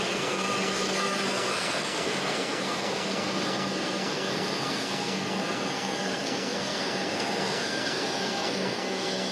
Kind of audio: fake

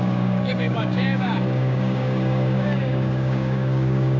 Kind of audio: fake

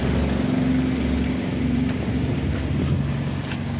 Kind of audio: real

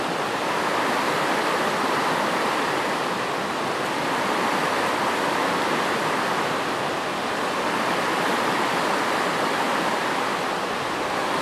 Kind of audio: real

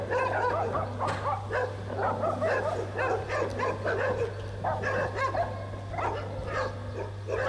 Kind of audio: real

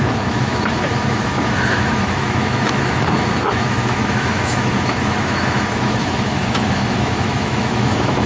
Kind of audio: fake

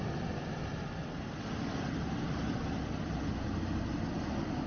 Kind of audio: real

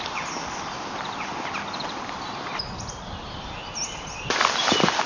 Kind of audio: real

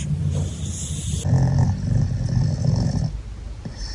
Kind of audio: real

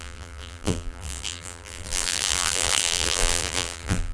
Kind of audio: fake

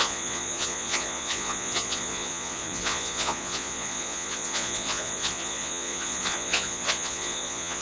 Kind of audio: fake